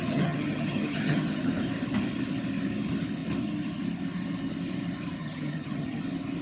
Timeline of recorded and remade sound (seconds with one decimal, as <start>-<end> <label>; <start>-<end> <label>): 0.0-1.5 remade; 1.5-5.2 recorded; 5.2-6.0 remade; 6.0-6.4 recorded